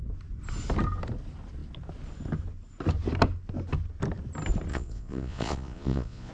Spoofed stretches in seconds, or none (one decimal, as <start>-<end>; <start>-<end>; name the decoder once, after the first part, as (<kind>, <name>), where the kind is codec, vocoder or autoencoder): 4.7-6.3 (vocoder, Vocos)